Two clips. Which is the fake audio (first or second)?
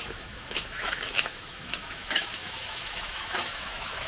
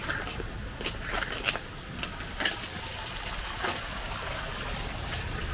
first